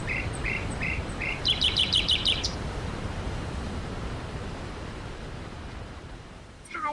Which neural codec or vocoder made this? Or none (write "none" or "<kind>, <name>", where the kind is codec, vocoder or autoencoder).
vocoder, BigVGAN v2